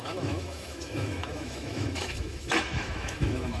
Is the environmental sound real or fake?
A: fake